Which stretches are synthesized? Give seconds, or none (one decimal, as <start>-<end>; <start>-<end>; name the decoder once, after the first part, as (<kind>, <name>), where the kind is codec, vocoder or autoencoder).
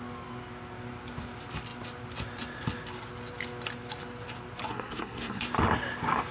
4.7-5.4 (codec, SNAC)